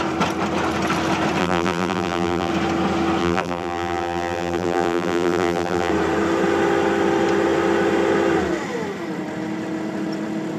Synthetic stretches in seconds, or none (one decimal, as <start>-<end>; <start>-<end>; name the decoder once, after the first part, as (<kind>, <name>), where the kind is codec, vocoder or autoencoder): 1.4-2.5 (vocoder, BigVGAN v2); 3.2-5.9